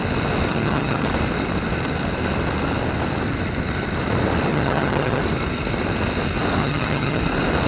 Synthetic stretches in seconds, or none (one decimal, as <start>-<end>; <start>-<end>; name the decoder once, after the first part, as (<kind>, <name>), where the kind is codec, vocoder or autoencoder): 0.5-1.1 (vocoder, HiFi-GAN); 4.5-5.2; 6.6-7.2